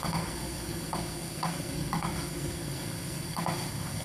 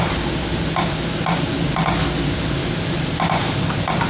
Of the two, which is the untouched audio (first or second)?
second